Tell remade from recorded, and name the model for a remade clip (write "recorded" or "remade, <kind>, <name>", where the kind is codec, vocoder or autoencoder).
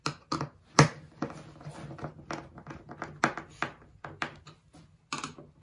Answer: recorded